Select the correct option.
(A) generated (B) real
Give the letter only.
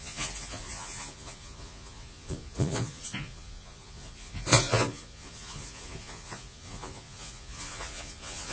A